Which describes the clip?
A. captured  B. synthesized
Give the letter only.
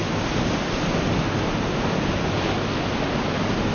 A